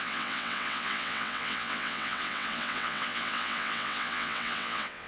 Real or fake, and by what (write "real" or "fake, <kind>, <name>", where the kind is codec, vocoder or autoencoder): fake, vocoder, WaveNeXt